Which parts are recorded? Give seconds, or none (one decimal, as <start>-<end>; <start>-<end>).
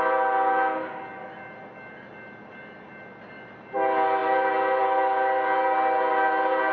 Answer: 0.0-6.7